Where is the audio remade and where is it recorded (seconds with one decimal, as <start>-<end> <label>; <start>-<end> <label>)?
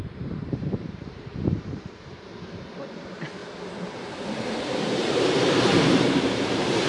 0.0-3.4 remade; 3.4-3.9 recorded; 3.9-6.9 remade